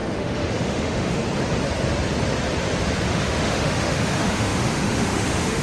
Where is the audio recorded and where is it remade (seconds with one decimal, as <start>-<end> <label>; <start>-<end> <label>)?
0.0-1.2 remade; 1.2-3.1 recorded; 3.1-5.6 remade